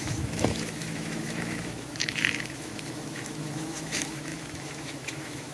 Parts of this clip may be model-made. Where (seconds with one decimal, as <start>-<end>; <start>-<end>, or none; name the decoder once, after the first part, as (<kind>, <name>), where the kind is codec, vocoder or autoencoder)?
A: 0.0-5.5 (autoencoder, DAC-VAE)